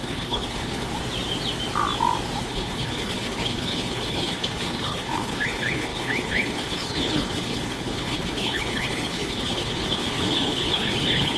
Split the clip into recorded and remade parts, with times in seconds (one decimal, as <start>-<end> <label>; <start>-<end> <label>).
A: 0.0-0.9 remade; 0.9-2.4 recorded; 2.4-11.4 remade